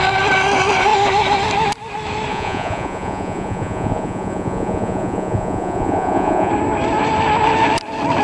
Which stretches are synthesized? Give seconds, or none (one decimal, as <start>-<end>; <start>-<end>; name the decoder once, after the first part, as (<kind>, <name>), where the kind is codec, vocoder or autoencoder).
2.3-6.5 (vocoder, Vocos)